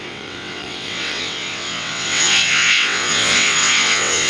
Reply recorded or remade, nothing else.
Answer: remade